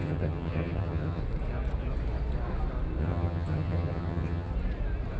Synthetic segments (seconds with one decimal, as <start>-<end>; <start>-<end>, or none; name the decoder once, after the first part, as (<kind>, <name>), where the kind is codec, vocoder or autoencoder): 0.0-1.2 (vocoder, HiFi-GAN); 3.0-4.5